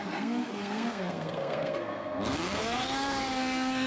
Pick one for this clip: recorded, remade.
remade